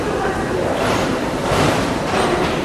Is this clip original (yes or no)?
no